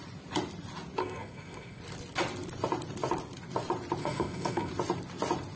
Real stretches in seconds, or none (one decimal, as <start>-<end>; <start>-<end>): 0.0-1.0; 1.8-4.0; 4.7-5.6